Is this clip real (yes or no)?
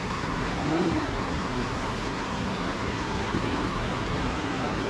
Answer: no